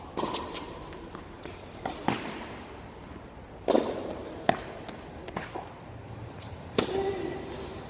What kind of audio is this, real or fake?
real